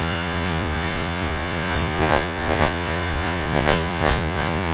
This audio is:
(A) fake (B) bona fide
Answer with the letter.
A